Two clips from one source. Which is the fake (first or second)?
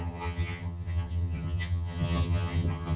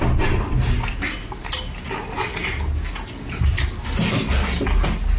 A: first